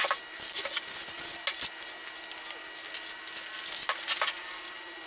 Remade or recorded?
recorded